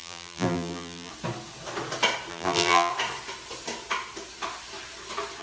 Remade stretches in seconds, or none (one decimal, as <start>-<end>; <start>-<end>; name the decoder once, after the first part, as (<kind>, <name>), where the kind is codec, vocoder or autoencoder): 0.0-1.1 (vocoder, BigVGAN v2); 2.3-2.9